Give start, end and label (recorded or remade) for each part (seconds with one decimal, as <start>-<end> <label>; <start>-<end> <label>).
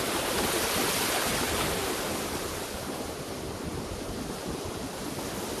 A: 0.0-5.6 recorded